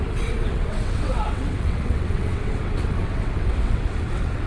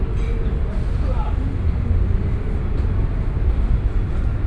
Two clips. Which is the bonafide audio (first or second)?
second